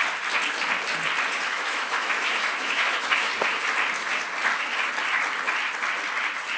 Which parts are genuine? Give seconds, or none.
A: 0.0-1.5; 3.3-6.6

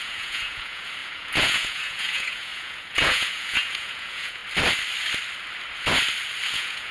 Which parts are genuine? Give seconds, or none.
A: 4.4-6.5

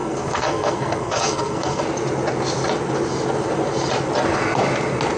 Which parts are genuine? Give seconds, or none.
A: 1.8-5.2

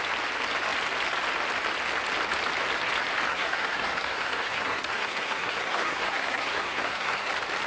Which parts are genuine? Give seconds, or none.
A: 0.0-3.3; 7.3-7.7